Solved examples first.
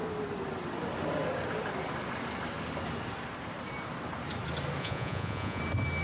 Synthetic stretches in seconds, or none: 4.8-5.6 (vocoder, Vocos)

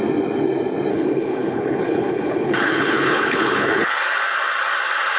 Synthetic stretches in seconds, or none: 0.9-4.0 (codec, HILCodec)

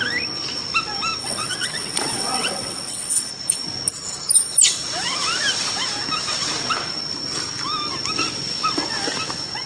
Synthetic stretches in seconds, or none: 1.2-3.3 (vocoder, WaveNeXt)

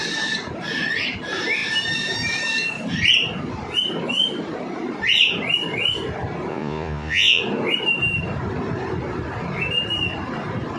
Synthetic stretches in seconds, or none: 6.5-7.4 (vocoder, Vocos)

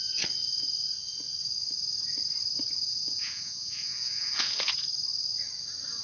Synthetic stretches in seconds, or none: 2.9-4.7 (vocoder, Vocos)

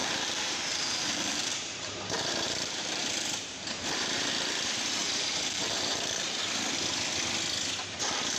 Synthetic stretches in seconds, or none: 0.0-4.3 (vocoder, BigVGAN v2); 5.0-6.4

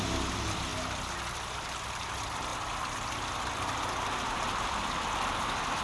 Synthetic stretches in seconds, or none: none

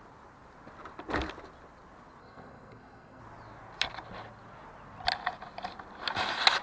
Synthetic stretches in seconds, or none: 2.2-3.2 (codec, SNAC)